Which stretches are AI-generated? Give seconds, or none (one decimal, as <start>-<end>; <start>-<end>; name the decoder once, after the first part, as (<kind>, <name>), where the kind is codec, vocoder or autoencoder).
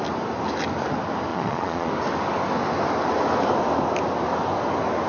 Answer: 1.3-1.9 (vocoder, Vocos)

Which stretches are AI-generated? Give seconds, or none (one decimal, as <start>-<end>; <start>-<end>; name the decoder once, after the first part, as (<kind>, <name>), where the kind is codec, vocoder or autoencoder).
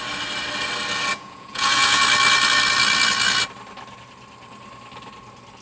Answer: 1.1-2.0 (vocoder, Vocos)